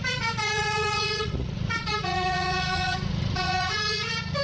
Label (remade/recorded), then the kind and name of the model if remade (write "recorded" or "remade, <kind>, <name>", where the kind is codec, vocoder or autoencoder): remade, vocoder, Vocos